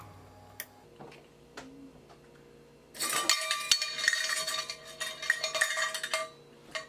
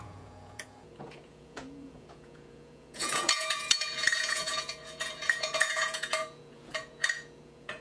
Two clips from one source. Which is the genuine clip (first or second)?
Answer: first